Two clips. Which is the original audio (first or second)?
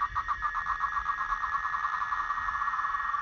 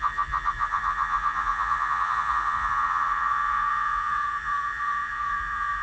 first